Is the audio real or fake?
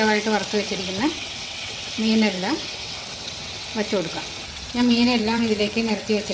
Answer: fake